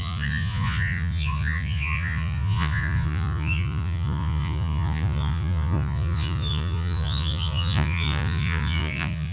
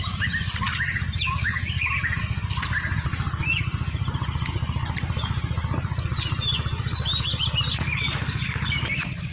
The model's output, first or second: first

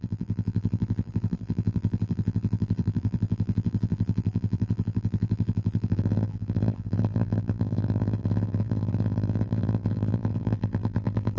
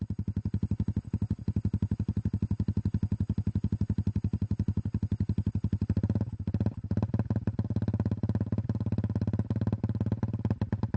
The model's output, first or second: first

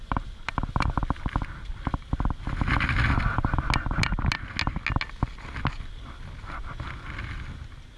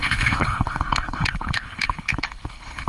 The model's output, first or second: second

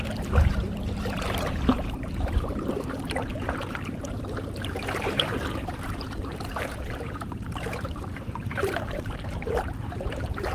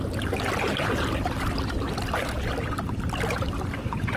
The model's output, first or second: first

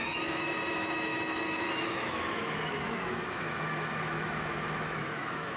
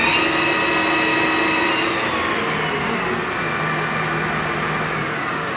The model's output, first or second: first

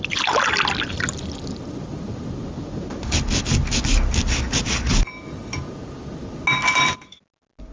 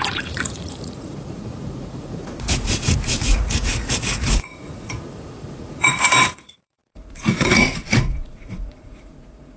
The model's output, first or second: second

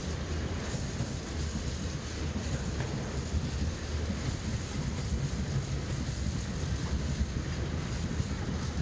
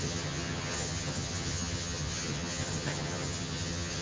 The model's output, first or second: second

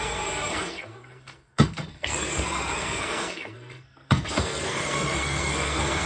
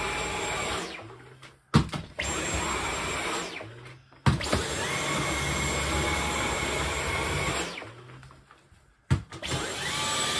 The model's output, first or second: first